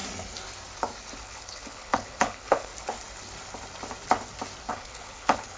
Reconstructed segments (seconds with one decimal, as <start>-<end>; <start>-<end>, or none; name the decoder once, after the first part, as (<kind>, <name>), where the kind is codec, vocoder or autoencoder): 1.2-2.7 (codec, HILCodec); 4.7-5.6